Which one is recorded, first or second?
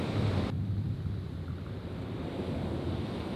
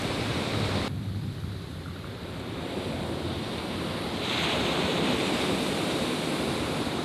first